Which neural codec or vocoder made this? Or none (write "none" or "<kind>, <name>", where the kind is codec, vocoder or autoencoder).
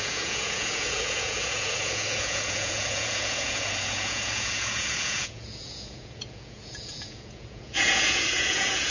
vocoder, Vocos